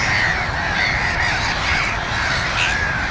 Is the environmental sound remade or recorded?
remade